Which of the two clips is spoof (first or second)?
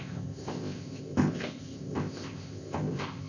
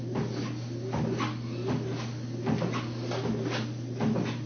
first